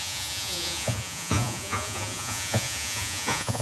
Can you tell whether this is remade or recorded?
remade